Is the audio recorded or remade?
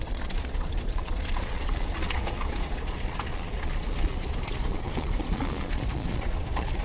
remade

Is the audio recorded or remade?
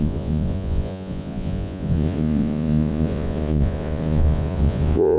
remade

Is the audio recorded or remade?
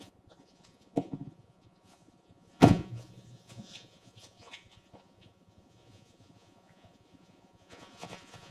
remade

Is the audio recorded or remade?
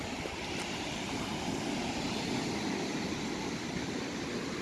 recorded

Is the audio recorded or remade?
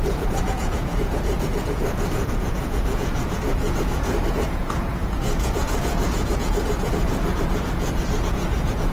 remade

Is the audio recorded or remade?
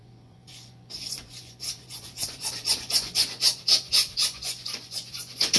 remade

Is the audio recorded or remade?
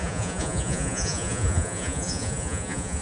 remade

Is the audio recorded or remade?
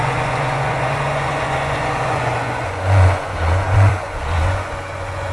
remade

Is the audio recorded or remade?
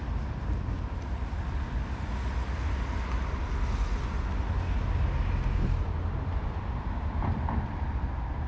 recorded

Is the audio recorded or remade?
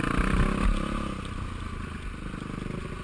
recorded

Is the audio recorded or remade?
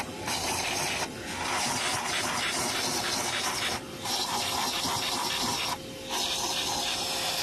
recorded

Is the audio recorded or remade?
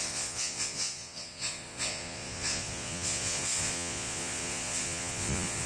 remade